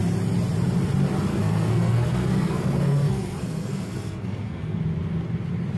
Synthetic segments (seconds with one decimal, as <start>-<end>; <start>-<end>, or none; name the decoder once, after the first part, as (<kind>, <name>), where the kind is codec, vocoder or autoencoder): 1.3-4.8 (codec, SNAC)